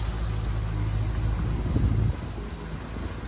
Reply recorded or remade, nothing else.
recorded